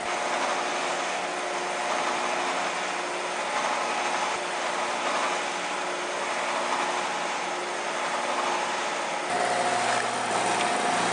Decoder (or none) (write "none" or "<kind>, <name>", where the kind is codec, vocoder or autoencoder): none